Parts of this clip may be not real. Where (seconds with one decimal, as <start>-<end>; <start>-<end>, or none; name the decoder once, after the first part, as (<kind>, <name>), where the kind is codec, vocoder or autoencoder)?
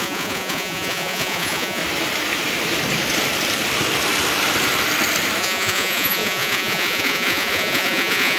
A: 0.0-1.8 (vocoder, Vocos); 5.4-8.4